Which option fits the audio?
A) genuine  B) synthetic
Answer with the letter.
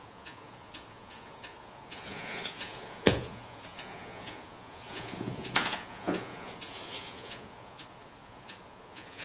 B